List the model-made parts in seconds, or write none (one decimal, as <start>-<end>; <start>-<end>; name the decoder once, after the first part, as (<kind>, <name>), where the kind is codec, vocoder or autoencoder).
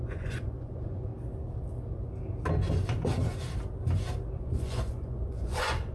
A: 0.0-1.1 (vocoder, Vocos); 4.4-5.9